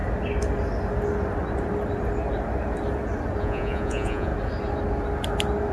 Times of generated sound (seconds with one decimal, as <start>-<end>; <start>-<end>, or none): 3.4-4.3